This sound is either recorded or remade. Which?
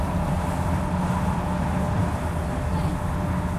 recorded